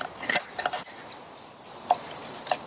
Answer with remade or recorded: recorded